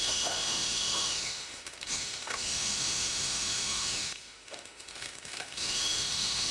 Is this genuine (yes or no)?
no